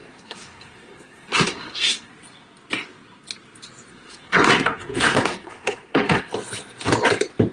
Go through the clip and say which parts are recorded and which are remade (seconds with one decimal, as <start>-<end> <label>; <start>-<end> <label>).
0.0-2.1 remade; 2.1-3.9 recorded; 3.9-6.3 remade; 6.3-7.5 recorded

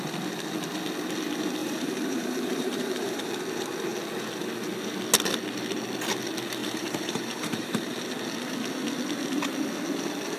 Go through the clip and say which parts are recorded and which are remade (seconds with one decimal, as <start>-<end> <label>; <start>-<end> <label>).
0.0-1.6 recorded; 1.6-3.3 remade; 3.3-6.6 recorded; 6.6-8.0 remade; 8.0-10.4 recorded

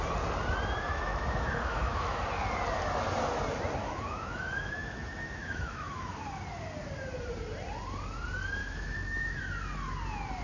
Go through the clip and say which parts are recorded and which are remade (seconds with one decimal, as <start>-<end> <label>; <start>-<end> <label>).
0.0-0.9 recorded; 0.9-2.2 remade; 2.2-3.8 recorded; 3.8-6.2 remade; 6.2-8.6 recorded; 8.6-9.4 remade; 9.4-10.4 recorded

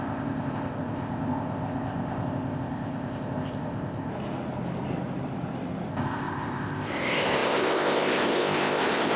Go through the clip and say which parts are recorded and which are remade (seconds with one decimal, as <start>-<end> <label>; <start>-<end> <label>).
0.0-4.1 remade; 4.1-5.9 recorded; 5.9-9.2 remade

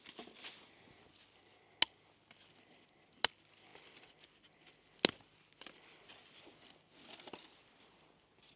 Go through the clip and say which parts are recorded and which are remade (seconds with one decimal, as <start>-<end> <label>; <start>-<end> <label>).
0.0-8.6 recorded

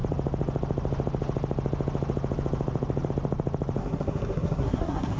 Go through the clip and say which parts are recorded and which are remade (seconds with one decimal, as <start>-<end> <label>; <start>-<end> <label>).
0.0-3.8 recorded; 3.8-5.2 remade

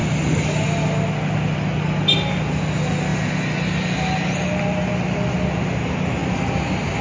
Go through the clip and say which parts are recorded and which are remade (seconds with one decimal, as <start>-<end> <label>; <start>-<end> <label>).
0.0-7.0 recorded